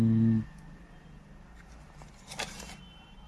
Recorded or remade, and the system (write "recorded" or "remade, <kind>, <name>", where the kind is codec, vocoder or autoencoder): recorded